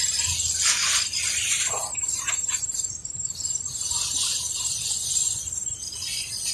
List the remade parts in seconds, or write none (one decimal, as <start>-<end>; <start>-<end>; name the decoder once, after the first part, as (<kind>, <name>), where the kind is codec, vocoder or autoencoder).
none